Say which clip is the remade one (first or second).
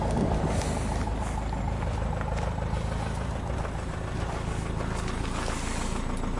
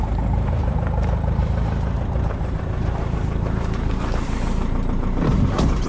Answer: second